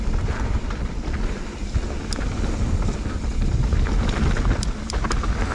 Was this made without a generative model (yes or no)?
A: yes